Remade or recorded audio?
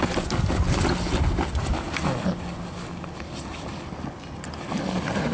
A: recorded